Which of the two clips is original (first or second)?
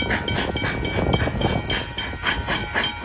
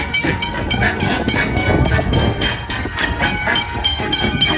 first